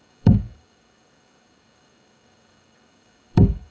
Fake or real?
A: fake